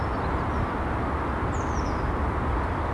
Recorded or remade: recorded